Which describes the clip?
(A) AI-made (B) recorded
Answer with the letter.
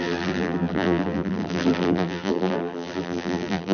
A